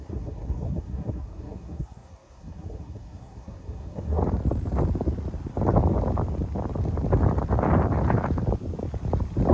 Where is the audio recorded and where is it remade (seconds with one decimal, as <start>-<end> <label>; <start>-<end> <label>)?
0.0-4.2 remade; 4.2-9.5 recorded